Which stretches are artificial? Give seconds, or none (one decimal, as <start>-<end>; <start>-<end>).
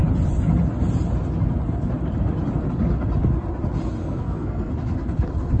4.0-4.7